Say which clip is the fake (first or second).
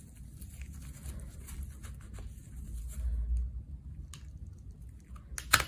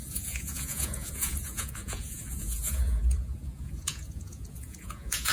second